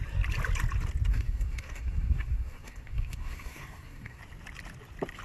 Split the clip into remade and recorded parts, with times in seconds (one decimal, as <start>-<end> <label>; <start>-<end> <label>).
0.0-1.1 recorded; 1.1-4.2 remade; 4.2-5.2 recorded